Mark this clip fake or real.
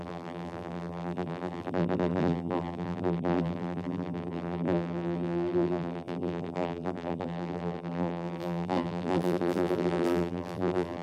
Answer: fake